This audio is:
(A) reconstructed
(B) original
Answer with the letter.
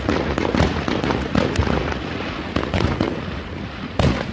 A